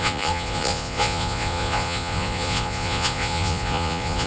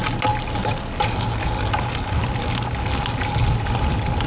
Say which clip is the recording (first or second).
second